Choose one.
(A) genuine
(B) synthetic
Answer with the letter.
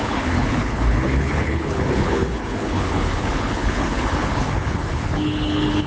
B